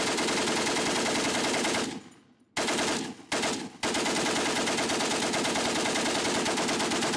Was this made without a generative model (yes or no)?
yes